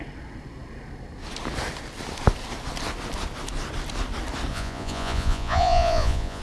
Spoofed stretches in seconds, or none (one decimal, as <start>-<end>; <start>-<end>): 4.5-6.4